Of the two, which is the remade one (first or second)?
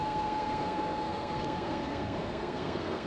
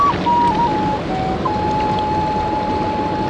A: first